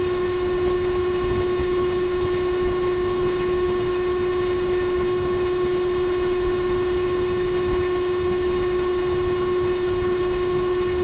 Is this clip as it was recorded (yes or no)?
no